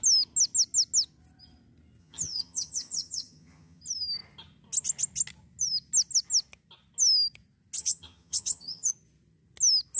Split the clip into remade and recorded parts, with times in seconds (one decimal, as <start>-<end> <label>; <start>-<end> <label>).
0.0-2.0 recorded; 2.0-3.8 remade; 3.8-7.8 recorded; 7.8-8.9 remade; 8.9-10.0 recorded

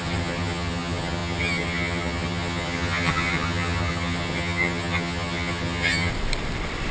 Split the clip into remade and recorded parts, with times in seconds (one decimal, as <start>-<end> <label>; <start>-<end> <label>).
0.0-6.1 remade; 6.1-6.9 recorded

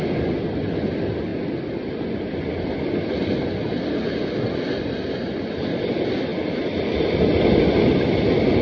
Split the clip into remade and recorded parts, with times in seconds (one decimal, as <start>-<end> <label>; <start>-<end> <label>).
0.0-8.6 recorded

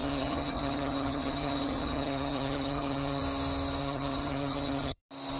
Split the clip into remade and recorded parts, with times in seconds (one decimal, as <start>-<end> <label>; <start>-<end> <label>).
0.0-3.2 remade; 3.2-3.8 recorded; 3.8-5.0 remade; 5.0-5.4 recorded